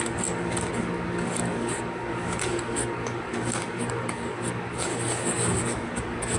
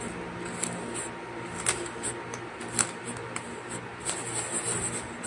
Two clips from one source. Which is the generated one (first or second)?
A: first